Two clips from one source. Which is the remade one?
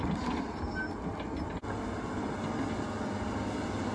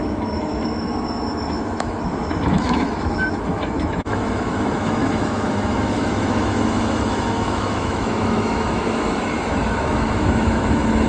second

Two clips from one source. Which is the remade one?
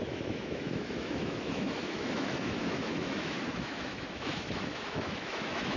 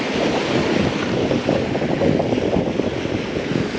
first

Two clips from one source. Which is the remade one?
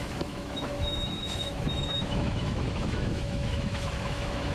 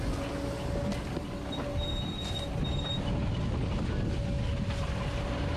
first